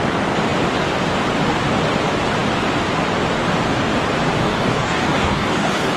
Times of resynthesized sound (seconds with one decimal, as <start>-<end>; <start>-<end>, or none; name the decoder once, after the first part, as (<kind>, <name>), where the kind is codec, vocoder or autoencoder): 4.4-6.0 (codec, DAC)

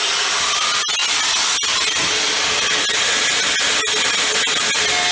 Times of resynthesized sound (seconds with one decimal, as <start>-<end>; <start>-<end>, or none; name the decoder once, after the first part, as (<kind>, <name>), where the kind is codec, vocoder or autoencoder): none